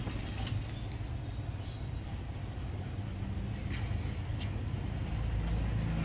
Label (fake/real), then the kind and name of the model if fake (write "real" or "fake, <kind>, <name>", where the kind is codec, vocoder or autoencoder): real